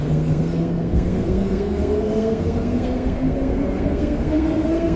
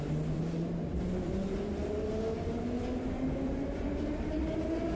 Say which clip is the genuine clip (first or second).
second